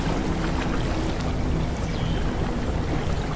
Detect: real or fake real